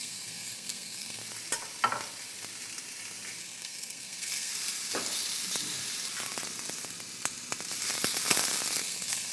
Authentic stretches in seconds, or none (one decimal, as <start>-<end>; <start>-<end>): 1.2-3.4; 4.5-8.8